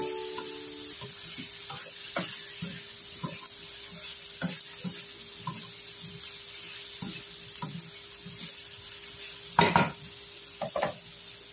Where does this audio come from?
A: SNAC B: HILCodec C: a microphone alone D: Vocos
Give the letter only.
C